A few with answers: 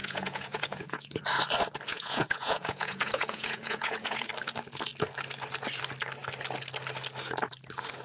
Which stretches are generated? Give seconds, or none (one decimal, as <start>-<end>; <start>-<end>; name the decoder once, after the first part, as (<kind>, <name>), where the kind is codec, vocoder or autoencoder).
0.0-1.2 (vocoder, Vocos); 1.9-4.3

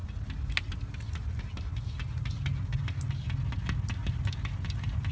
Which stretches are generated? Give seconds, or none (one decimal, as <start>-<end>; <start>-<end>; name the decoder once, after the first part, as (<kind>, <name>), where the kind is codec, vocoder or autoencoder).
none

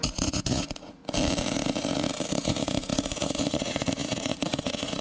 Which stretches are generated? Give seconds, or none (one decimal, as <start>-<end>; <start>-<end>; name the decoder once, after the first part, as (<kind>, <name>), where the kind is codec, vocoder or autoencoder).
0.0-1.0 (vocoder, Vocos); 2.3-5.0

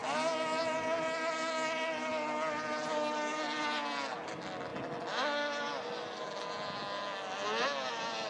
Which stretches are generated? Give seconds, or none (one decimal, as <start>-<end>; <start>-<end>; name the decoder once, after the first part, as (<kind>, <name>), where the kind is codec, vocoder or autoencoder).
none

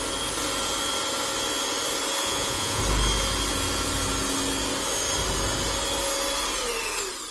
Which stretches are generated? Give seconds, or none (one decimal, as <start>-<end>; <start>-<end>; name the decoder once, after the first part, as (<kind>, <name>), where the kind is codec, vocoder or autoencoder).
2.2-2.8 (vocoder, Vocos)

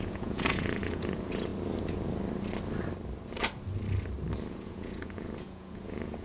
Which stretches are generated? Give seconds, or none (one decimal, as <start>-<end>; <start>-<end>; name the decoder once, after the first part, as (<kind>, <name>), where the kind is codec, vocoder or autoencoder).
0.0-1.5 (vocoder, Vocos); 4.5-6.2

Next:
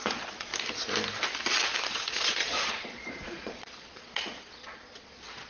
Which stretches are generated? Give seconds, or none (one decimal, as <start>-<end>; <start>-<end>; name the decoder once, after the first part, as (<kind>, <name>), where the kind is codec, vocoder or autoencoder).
0.0-0.5 (vocoder, Vocos); 1.9-5.5

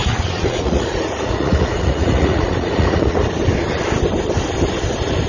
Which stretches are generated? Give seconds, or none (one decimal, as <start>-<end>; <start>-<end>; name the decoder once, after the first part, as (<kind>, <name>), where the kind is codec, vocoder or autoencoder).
0.0-3.2 (vocoder, Vocos)